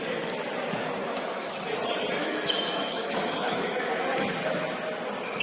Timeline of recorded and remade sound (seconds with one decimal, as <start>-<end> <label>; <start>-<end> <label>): 0.0-1.0 recorded; 1.0-1.6 remade; 1.6-2.2 recorded; 2.2-3.9 remade; 3.9-5.4 recorded